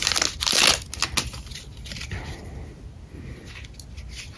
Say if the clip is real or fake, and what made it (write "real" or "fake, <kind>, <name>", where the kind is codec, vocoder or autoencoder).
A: real